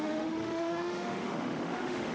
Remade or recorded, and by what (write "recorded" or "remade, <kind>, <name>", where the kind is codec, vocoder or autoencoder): remade, autoencoder, DAC-VAE